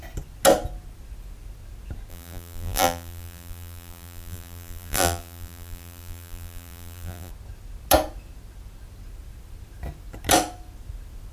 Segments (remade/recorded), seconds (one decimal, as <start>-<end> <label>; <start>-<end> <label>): 0.0-2.1 recorded; 2.1-7.3 remade; 7.3-11.3 recorded